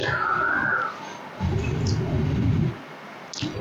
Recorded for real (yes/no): yes